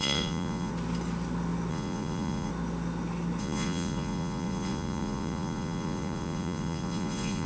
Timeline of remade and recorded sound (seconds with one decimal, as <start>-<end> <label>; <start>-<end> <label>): 0.0-0.7 remade; 0.7-1.7 recorded; 1.7-2.5 remade; 2.5-3.4 recorded; 3.4-7.5 remade